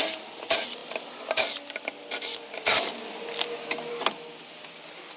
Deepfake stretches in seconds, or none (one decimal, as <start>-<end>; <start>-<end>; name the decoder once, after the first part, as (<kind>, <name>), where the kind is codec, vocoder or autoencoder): none